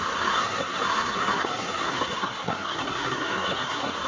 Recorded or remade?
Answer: remade